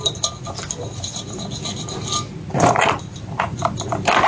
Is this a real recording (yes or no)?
yes